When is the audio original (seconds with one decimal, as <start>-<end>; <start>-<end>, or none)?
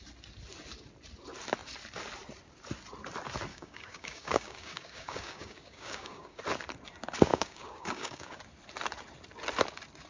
0.0-3.5; 6.4-7.3; 8.4-10.1